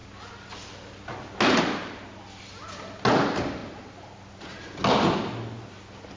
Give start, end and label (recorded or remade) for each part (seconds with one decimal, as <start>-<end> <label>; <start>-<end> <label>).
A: 0.0-6.2 recorded